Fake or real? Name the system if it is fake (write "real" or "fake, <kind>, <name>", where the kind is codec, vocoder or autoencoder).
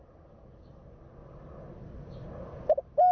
real